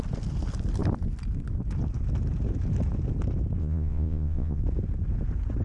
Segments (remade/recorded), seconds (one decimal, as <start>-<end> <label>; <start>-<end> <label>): 0.0-3.6 recorded; 3.6-4.6 remade; 4.6-5.6 recorded